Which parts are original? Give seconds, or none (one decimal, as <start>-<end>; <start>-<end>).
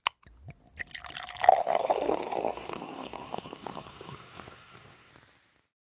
0.0-1.6; 5.1-5.9